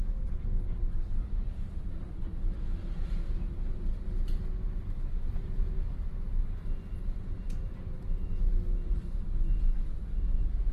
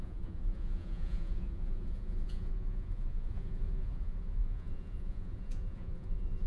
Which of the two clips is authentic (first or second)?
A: first